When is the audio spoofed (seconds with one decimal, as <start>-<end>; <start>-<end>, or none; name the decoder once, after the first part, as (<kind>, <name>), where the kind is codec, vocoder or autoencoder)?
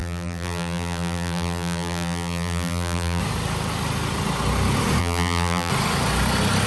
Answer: 0.0-3.2 (vocoder, BigVGAN v2); 5.0-5.7